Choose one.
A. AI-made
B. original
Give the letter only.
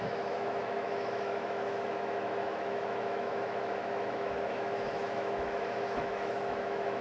A